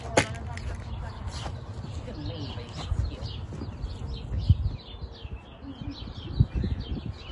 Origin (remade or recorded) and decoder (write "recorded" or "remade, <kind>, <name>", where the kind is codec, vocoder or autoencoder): recorded